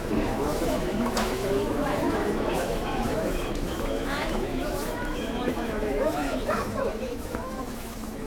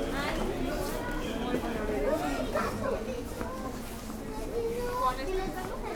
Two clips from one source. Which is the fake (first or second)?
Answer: first